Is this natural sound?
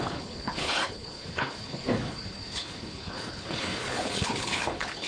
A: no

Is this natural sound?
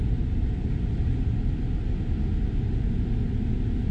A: yes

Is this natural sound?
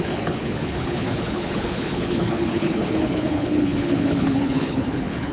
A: no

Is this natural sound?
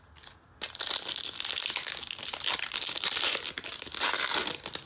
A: yes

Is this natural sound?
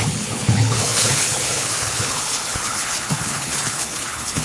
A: no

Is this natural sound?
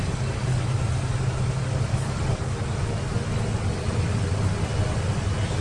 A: yes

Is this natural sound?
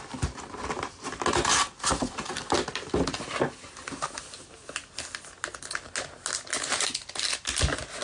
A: yes